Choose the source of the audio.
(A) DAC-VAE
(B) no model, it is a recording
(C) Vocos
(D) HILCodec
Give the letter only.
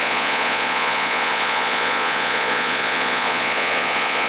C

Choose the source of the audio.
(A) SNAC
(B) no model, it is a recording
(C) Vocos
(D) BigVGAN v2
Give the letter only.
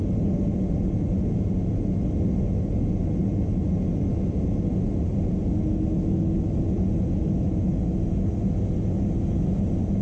B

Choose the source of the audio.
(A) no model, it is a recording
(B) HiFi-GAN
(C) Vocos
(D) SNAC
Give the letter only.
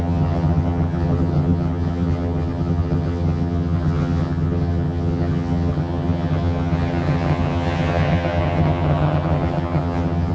B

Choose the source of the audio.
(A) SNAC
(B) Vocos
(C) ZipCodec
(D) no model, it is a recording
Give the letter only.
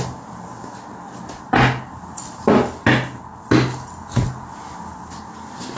D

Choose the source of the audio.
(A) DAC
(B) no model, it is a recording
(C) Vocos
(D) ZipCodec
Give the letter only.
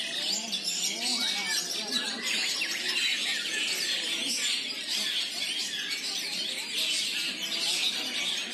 B